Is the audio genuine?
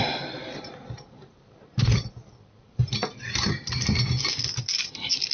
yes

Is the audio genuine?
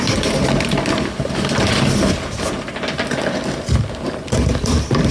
yes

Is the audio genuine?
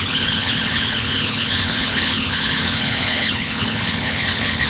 no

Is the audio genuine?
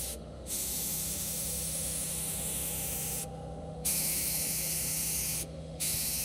no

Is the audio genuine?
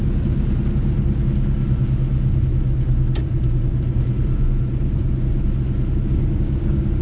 yes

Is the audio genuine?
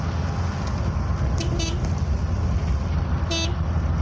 yes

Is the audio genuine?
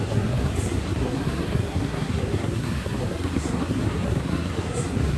no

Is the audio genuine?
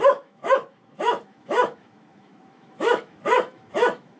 no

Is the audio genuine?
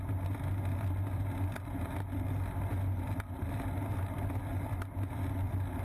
yes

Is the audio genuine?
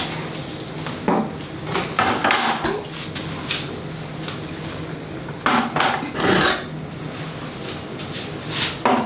yes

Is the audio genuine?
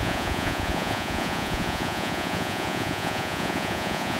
no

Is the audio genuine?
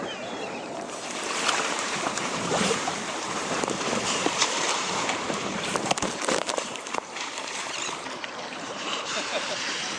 no